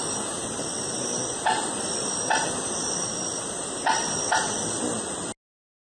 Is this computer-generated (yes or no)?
no